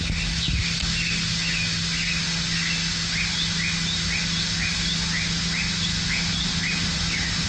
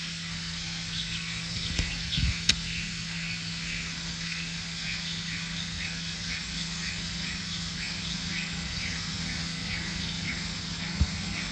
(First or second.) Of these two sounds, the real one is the first